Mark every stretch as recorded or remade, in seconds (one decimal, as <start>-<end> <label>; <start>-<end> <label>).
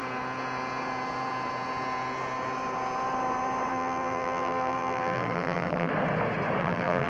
0.0-3.7 recorded; 3.7-5.9 remade; 5.9-6.6 recorded; 6.6-7.1 remade